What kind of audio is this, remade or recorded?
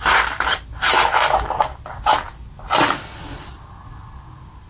recorded